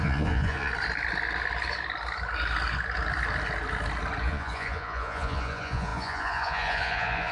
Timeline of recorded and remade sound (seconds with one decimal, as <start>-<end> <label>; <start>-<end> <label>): 0.0-0.7 remade; 0.7-4.2 recorded; 4.2-7.3 remade